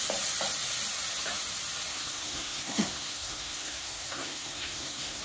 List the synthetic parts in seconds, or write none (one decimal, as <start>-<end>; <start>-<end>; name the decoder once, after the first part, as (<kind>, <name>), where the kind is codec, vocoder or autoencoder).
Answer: 1.9-5.2 (codec, SNAC)